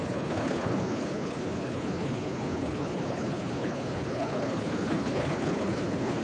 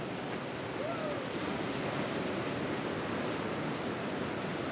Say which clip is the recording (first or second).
second